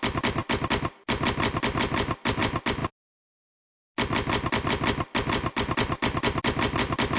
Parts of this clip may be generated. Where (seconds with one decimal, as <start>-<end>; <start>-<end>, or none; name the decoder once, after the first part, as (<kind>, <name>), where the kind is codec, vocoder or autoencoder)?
none